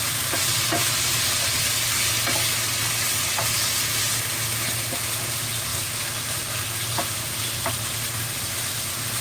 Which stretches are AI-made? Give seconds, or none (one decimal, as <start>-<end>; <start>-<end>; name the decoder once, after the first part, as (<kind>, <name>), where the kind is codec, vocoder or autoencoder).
none